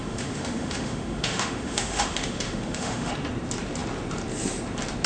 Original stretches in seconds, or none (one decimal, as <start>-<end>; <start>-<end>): 3.1-5.1

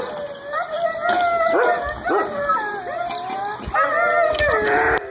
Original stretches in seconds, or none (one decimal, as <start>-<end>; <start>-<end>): 0.0-5.1